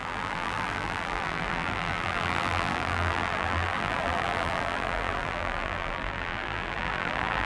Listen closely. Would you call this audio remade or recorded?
remade